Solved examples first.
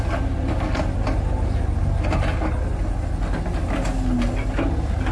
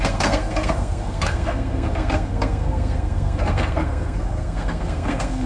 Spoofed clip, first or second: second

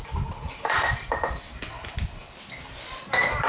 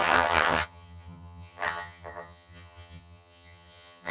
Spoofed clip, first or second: second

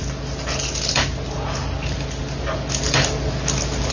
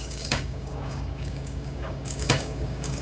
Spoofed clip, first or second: second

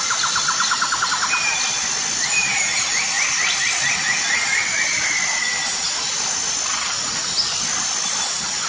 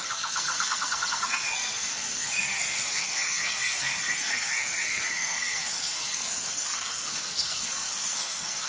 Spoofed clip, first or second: second